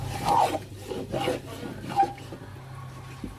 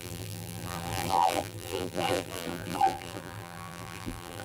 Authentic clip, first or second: first